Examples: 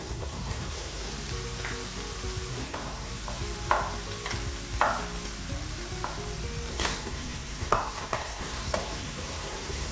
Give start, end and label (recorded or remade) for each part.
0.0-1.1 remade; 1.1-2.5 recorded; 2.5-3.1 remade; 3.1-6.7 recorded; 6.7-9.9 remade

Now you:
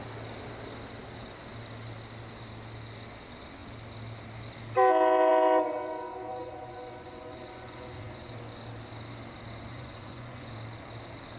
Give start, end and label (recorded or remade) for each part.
0.0-6.3 recorded; 6.3-8.3 remade; 8.3-9.7 recorded; 9.7-10.5 remade; 10.5-11.4 recorded